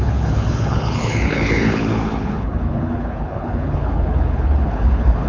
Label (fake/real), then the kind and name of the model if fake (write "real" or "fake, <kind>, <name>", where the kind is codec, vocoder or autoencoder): fake, codec, HILCodec